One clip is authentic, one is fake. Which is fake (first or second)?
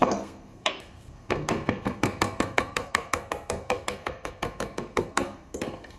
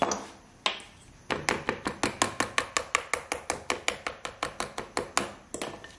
first